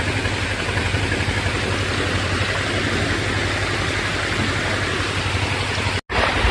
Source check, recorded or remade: recorded